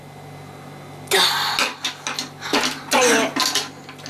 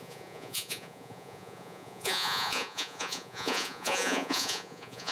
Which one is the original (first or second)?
first